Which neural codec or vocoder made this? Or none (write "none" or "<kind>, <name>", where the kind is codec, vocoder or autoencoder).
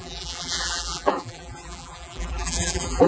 vocoder, BigVGAN v2